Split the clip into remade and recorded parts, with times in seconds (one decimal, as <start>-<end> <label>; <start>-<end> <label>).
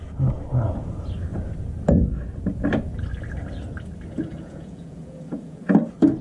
0.0-4.3 recorded; 4.3-5.6 remade; 5.6-6.2 recorded